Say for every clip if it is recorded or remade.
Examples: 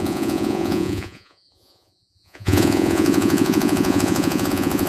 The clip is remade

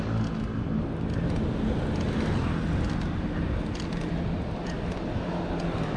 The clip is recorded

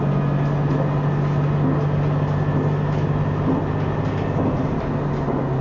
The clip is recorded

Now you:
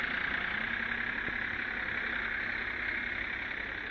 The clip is recorded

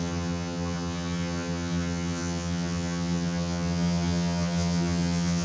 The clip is remade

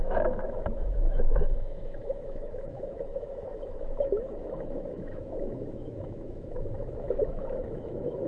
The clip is remade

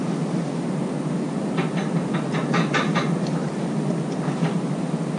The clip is recorded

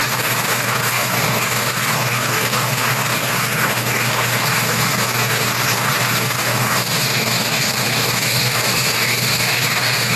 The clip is remade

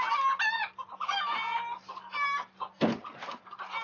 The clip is recorded